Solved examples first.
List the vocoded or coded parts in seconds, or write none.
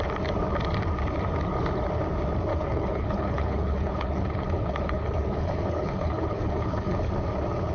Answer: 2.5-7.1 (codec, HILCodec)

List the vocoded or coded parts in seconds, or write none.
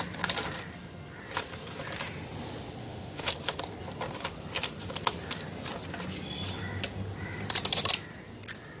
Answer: 2.8-3.3 (autoencoder, DAC-VAE)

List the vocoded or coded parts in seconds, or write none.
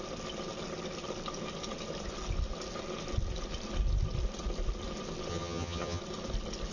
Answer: 5.3-6.0 (vocoder, HiFi-GAN)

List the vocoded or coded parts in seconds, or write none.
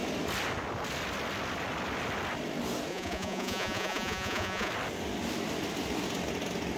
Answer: 2.9-4.7 (vocoder, Vocos)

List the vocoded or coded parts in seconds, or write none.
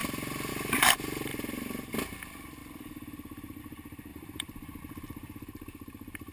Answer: 0.0-0.5 (vocoder, BigVGAN v2); 4.1-4.8